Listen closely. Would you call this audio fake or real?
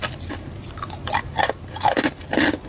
real